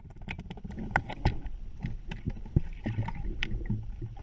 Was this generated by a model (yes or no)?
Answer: no